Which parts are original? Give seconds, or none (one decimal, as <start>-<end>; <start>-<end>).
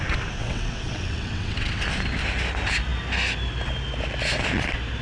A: 0.0-0.4; 1.8-5.0